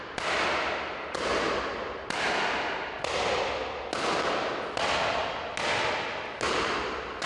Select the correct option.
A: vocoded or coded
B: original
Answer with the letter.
B